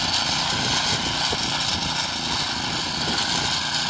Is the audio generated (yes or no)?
no